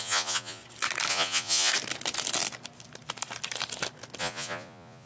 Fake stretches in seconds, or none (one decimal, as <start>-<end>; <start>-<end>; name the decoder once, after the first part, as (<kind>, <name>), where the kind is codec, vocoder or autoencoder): 0.0-0.6 (vocoder, Vocos); 1.1-1.7; 4.2-5.1